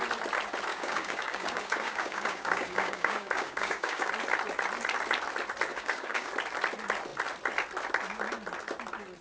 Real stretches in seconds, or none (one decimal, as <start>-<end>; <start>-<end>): 0.0-0.7; 4.1-5.7; 6.3-9.2